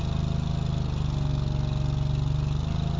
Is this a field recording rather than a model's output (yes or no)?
yes